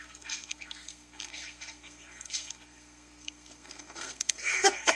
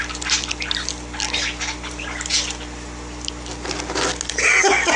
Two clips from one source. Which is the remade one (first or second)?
first